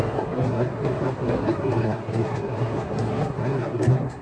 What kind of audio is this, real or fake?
fake